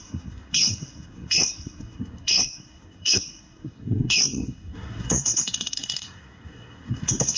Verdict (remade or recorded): remade